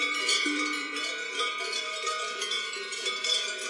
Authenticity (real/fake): fake